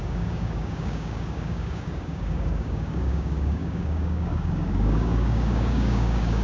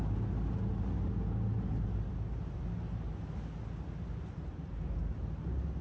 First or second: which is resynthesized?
first